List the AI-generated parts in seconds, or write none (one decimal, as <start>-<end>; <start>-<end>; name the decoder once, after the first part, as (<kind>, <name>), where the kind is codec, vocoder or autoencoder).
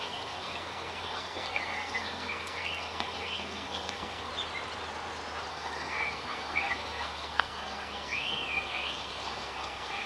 0.0-4.3 (codec, SNAC); 5.5-10.1